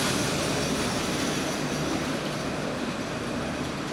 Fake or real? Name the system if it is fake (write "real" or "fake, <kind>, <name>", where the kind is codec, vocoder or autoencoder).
fake, vocoder, BigVGAN v2